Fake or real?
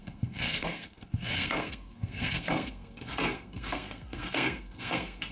fake